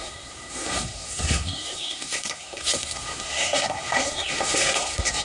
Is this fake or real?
fake